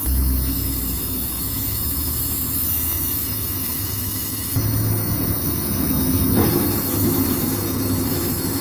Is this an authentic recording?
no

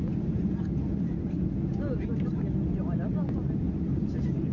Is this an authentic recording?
yes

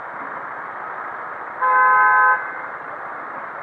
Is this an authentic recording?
yes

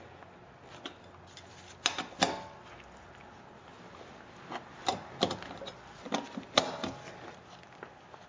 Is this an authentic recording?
yes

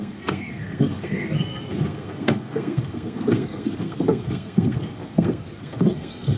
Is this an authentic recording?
no